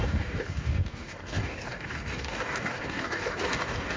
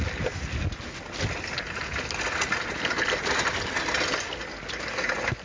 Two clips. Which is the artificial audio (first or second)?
first